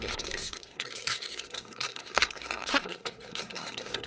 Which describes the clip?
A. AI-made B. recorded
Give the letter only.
A